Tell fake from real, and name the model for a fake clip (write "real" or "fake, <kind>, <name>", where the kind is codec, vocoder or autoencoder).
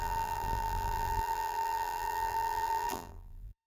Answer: fake, vocoder, BigVGAN v2